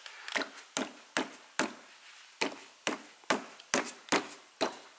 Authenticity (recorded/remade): recorded